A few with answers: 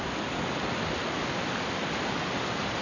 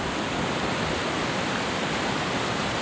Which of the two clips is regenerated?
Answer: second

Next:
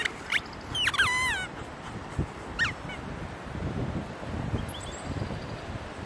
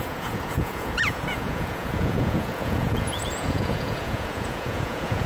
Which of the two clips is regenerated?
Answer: second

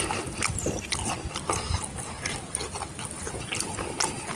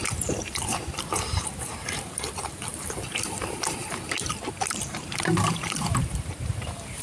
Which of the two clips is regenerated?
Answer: second